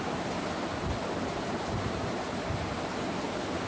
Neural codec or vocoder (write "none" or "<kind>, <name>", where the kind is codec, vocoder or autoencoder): none